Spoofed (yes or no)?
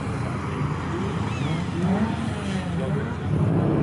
no